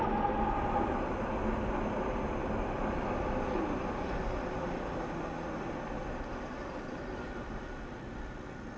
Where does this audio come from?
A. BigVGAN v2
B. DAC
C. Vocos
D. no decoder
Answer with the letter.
D